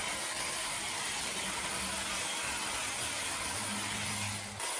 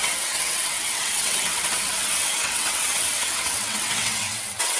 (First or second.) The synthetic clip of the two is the second